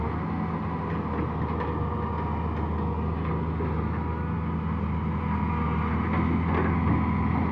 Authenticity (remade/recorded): recorded